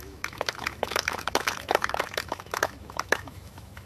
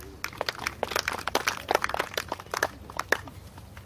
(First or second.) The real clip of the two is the second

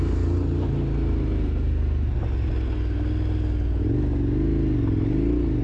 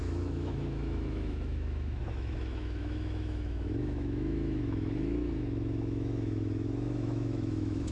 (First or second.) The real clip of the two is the first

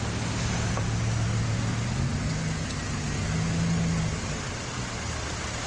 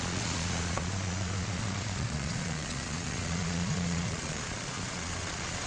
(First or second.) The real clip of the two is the first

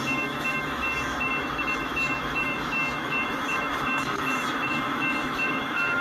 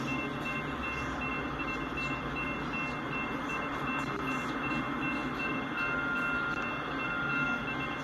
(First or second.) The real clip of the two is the second